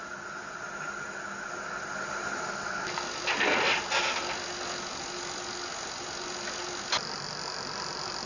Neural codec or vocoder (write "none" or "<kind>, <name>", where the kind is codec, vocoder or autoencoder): none